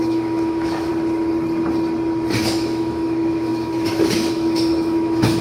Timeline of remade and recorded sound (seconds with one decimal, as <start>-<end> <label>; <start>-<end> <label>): 0.0-0.9 remade; 0.9-2.4 recorded; 2.4-5.4 remade

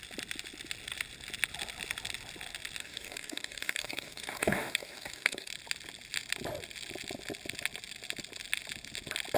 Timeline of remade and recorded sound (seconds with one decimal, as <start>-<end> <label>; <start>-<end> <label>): 0.0-2.8 recorded; 2.8-5.5 remade; 5.5-9.4 recorded

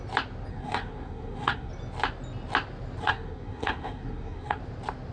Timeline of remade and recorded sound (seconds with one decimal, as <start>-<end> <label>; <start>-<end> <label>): 0.0-0.5 recorded; 0.5-1.7 remade; 1.7-3.0 recorded; 3.0-4.6 remade; 4.6-5.1 recorded

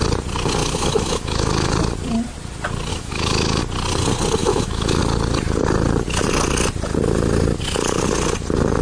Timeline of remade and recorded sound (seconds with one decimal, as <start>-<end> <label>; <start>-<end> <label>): 0.0-0.6 recorded; 0.6-1.7 remade; 1.7-2.9 recorded; 2.9-3.6 remade; 3.6-4.4 recorded; 4.4-5.0 remade; 5.0-8.8 recorded

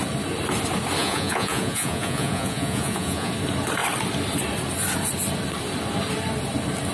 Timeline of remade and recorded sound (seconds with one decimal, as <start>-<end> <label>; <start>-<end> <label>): 0.0-1.0 recorded; 1.0-3.3 remade; 3.3-6.9 recorded

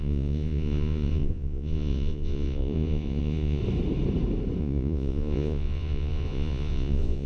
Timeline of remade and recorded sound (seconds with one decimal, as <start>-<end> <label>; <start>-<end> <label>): 0.0-3.6 remade; 3.6-4.6 recorded; 4.6-7.3 remade

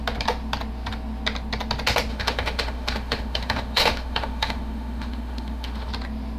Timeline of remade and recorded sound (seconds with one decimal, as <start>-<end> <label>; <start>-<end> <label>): 0.0-2.1 recorded; 2.1-5.9 remade; 5.9-6.4 recorded

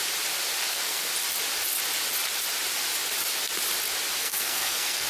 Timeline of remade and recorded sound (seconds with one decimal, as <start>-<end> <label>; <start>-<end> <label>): 0.0-0.7 recorded; 0.7-1.1 remade; 1.1-4.2 recorded; 4.2-5.1 remade